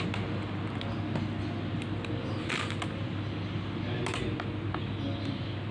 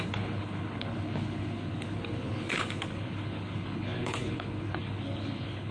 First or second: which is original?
first